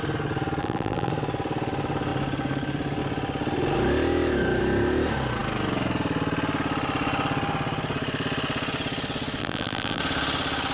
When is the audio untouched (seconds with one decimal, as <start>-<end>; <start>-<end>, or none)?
0.0-0.6; 1.1-9.4; 10.0-10.7